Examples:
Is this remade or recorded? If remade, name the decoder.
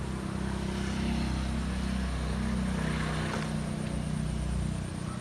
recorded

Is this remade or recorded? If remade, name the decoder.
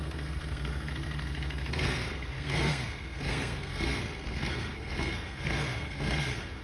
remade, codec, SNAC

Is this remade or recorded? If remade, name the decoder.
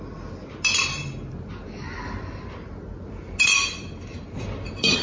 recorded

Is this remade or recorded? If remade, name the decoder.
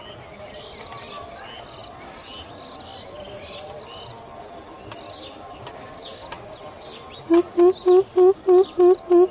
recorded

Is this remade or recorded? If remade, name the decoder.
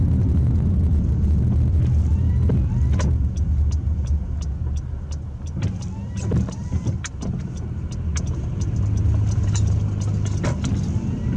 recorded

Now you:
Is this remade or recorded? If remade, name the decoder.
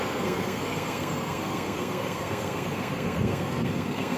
remade, codec, SNAC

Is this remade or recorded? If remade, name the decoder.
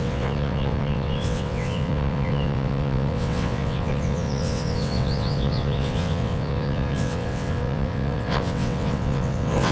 remade, vocoder, WaveNeXt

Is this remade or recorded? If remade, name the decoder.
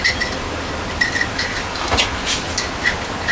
recorded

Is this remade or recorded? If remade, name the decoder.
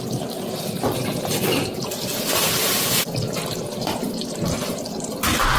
remade, vocoder, BigVGAN v2